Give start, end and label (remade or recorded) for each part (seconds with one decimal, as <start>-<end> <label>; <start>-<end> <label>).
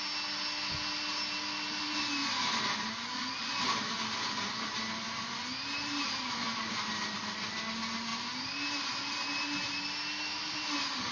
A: 0.0-11.1 recorded